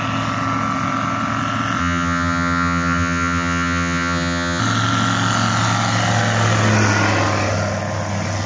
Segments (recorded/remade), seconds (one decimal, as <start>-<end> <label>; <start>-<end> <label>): 0.0-1.8 recorded; 1.8-4.6 remade; 4.6-8.5 recorded